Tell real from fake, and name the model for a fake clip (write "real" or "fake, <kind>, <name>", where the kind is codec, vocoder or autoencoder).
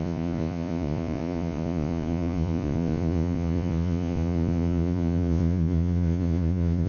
fake, vocoder, Vocos